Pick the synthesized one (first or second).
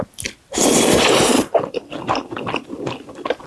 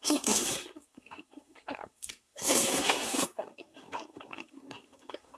second